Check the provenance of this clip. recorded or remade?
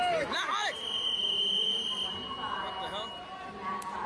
recorded